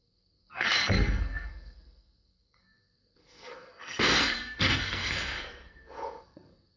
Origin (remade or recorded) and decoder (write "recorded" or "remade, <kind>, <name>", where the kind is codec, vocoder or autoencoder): remade, codec, SNAC